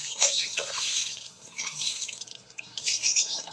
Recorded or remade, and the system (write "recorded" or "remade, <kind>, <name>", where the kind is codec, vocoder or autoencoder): remade, codec, SNAC